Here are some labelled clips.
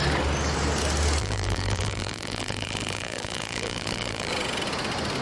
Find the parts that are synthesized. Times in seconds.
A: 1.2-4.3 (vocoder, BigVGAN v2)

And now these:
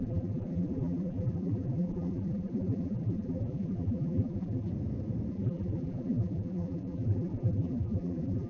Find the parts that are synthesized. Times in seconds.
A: 0.0-4.7 (vocoder, BigVGAN v2); 5.3-8.5